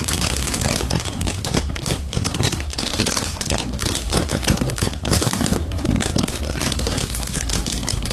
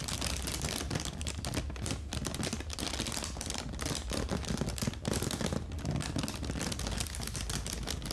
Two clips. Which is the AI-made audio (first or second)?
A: first